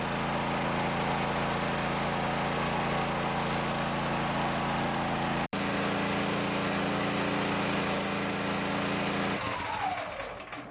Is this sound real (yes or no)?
yes